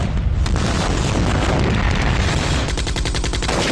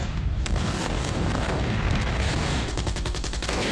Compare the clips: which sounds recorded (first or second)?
first